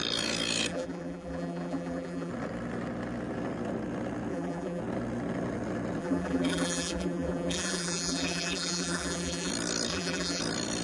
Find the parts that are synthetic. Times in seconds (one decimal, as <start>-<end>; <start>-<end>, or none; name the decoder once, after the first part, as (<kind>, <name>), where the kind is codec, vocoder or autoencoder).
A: 0.7-2.3 (vocoder, BigVGAN v2); 4.3-4.8; 6.0-9.5; 9.9-10.4